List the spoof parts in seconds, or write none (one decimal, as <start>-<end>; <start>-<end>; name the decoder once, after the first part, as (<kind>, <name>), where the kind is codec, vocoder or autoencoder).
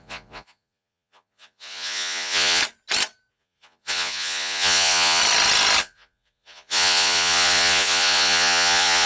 0.0-2.6 (vocoder, Vocos); 3.3-5.2; 5.8-9.1